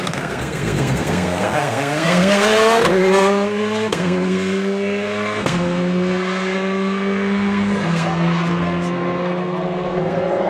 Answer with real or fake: fake